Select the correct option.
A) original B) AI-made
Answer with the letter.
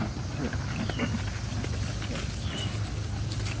A